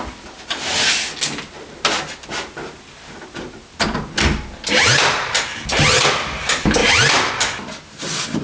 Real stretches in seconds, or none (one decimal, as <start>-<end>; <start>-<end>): 0.0-6.8; 7.3-8.4